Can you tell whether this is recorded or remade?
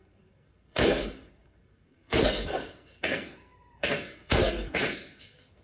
remade